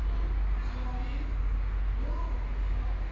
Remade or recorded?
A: recorded